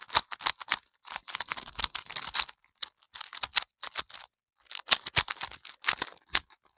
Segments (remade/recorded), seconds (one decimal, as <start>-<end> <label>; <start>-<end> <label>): 0.0-6.8 recorded